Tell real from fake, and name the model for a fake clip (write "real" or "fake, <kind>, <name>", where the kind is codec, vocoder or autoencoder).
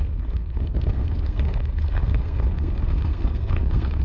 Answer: fake, codec, SNAC